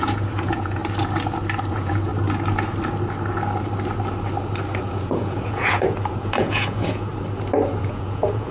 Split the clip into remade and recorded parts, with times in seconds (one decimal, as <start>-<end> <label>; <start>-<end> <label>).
0.0-0.8 remade; 0.8-1.7 recorded; 1.7-2.1 remade; 2.1-4.8 recorded; 4.8-7.1 remade; 7.1-7.8 recorded; 7.8-8.5 remade